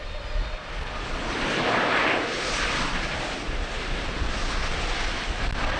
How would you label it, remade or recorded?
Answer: recorded